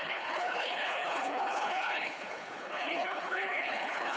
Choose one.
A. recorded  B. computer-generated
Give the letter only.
B